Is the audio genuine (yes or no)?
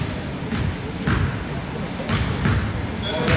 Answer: yes